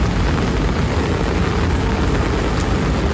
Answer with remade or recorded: recorded